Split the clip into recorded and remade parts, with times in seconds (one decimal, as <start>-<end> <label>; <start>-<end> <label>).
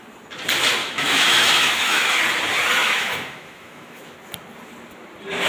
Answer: 0.0-0.8 recorded; 0.8-2.2 remade; 2.2-2.8 recorded; 2.8-4.0 remade; 4.0-5.5 recorded